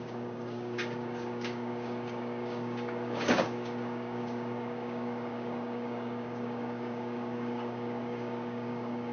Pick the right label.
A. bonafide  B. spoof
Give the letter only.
B